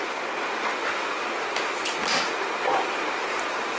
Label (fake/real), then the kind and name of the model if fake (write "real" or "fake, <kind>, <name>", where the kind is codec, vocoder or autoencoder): real